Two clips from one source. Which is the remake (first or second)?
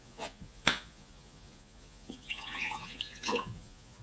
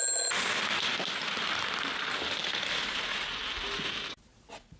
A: first